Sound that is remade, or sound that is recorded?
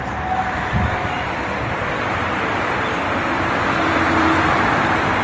recorded